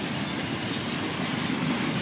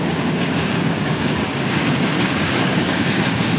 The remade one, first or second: second